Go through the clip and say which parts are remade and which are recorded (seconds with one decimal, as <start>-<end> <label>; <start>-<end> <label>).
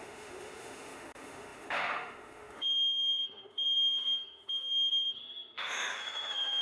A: 0.0-6.6 remade